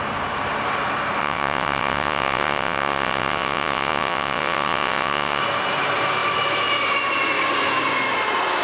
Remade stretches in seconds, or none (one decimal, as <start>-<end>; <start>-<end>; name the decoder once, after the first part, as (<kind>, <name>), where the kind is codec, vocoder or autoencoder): 1.2-5.4 (vocoder, WaveNeXt)